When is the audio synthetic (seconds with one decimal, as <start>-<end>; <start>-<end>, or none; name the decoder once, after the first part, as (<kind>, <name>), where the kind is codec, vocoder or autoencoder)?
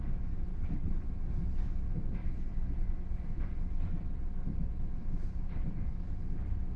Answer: 0.5-1.1 (codec, HILCodec)